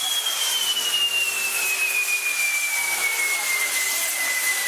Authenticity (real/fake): real